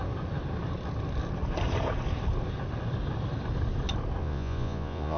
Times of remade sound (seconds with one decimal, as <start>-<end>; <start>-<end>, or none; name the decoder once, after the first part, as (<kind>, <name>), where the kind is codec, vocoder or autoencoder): 4.2-5.2 (vocoder, Vocos)

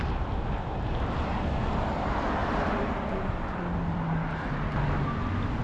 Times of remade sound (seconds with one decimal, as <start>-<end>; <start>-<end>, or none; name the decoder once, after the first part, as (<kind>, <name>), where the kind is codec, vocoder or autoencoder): 2.4-3.6 (vocoder, BigVGAN v2)